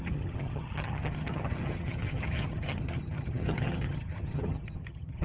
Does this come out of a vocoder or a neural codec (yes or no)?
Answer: yes